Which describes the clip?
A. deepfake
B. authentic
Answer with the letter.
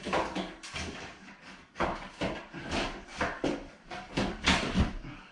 A